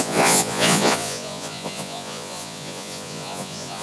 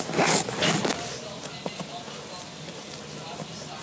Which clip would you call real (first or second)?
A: second